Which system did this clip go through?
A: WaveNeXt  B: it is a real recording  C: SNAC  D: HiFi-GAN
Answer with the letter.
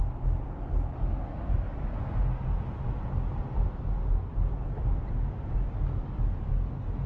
B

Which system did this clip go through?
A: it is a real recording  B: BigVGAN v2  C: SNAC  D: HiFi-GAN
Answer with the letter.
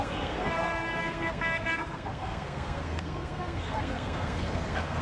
C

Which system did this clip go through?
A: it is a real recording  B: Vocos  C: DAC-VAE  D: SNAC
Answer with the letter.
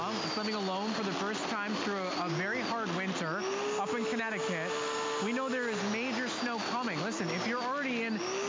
A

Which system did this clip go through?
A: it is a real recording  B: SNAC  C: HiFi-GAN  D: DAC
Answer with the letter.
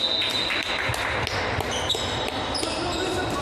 A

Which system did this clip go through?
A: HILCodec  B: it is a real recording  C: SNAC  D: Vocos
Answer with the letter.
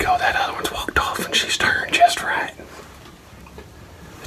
B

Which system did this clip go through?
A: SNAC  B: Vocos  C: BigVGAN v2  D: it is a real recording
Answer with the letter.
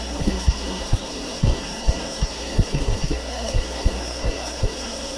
A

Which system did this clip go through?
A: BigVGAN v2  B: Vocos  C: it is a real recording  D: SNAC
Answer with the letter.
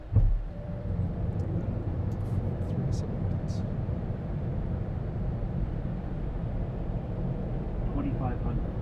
A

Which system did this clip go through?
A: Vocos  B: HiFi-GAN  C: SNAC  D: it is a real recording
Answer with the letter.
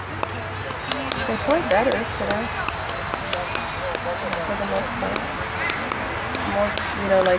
D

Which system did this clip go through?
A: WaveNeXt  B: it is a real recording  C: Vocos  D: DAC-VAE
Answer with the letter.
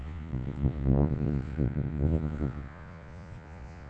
C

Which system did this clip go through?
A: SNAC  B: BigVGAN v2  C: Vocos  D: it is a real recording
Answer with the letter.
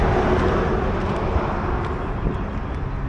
D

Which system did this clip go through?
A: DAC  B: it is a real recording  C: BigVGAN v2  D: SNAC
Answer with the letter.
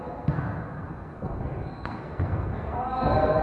D